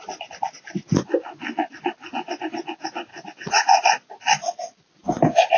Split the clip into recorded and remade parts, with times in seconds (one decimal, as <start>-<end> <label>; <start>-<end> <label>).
0.0-3.1 recorded; 3.1-4.1 remade; 4.1-5.6 recorded